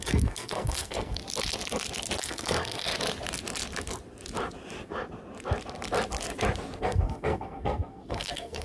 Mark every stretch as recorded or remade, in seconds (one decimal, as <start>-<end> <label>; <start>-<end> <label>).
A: 0.0-1.2 remade; 1.2-2.2 recorded; 2.2-2.9 remade; 2.9-6.8 recorded; 6.8-8.6 remade